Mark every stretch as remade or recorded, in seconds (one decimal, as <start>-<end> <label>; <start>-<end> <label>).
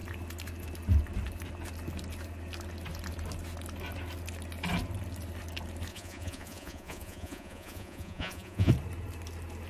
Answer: 0.0-5.9 recorded; 5.9-8.7 remade; 8.7-9.7 recorded